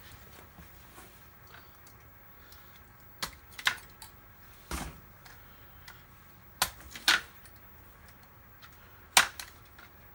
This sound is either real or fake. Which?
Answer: real